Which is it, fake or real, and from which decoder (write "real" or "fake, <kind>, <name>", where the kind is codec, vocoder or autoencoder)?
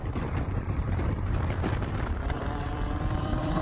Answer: fake, vocoder, BigVGAN v2